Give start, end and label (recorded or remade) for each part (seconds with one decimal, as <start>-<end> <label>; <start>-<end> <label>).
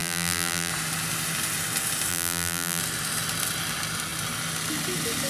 0.0-0.7 remade; 0.7-2.1 recorded; 2.1-2.8 remade; 2.8-5.3 recorded